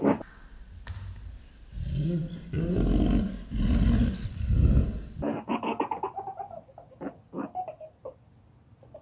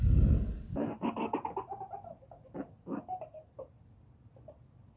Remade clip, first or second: second